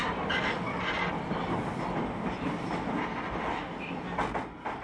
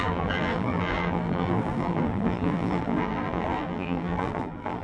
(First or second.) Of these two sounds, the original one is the first